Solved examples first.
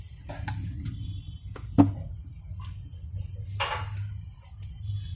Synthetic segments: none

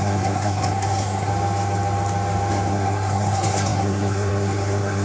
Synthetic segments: 0.0-1.3 (codec, SNAC); 2.7-5.0

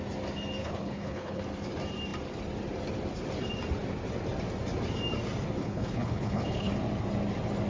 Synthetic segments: 0.6-1.4 (codec, HILCodec); 5.6-6.7

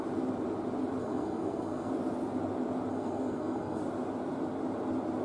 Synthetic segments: 1.0-1.9 (codec, SNAC); 2.9-3.8